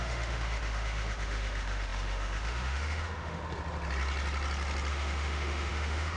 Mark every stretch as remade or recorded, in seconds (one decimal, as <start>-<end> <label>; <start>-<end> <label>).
0.0-3.4 remade; 3.4-4.9 recorded; 4.9-6.2 remade